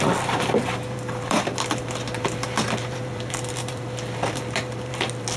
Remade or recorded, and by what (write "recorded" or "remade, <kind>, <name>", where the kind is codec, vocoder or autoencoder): remade, vocoder, BigVGAN v2